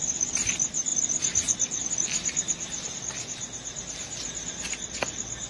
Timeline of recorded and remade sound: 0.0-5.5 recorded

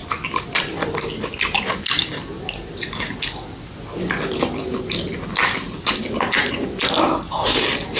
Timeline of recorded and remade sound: 0.0-8.0 recorded